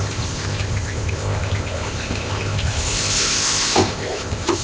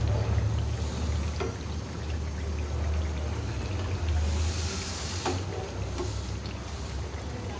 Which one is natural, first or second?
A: second